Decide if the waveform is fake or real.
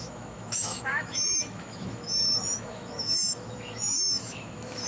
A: fake